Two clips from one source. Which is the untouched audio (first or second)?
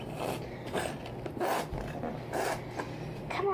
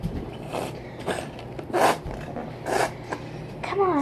first